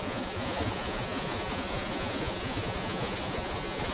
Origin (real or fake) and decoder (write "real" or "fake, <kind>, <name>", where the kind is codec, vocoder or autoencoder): fake, vocoder, Vocos